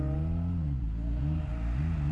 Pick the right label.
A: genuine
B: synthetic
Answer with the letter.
A